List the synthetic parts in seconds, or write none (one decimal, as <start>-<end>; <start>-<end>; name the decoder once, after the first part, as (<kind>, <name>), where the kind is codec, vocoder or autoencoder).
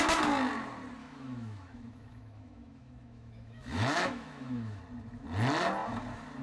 1.0-4.8 (autoencoder, DAC-VAE)